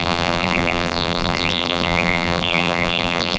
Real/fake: fake